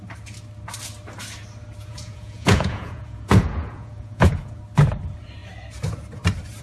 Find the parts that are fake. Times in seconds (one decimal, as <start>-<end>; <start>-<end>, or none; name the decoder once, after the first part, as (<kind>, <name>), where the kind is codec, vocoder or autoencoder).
1.8-4.6 (vocoder, Vocos)